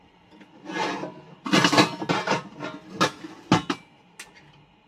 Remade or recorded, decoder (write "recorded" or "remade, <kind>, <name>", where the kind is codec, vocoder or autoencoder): recorded